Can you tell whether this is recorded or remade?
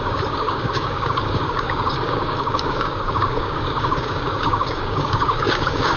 remade